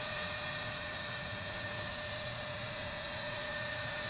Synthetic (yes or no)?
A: yes